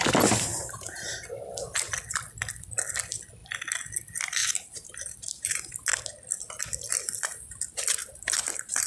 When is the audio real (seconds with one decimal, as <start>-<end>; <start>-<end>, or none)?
0.0-0.5; 1.1-4.4; 5.7-8.0

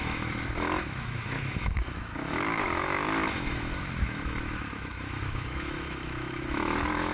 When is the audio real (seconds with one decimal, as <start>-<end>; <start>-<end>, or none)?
none

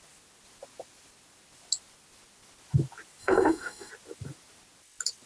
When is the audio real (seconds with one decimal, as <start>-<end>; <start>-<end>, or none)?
0.0-3.2; 3.9-5.3

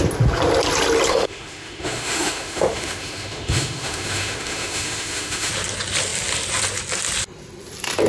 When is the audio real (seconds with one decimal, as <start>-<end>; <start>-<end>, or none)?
0.0-1.1; 5.5-8.1

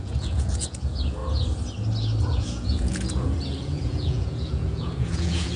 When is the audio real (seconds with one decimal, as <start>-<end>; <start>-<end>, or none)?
1.2-2.2

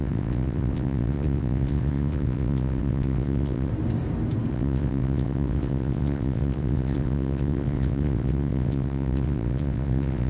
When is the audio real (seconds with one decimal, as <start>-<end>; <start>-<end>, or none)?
3.7-4.5

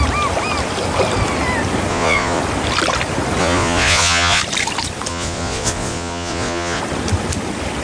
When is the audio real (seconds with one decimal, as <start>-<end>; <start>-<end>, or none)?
0.0-1.9; 2.4-3.4; 4.4-5.1; 6.8-7.8

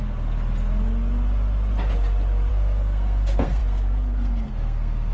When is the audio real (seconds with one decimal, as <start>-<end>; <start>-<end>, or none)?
0.0-2.5